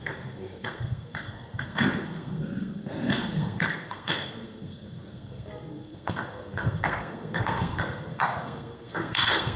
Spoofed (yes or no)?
yes